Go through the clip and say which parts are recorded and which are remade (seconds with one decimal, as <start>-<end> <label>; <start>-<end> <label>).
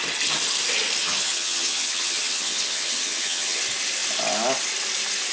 0.0-1.0 recorded; 1.0-3.6 remade; 3.6-5.3 recorded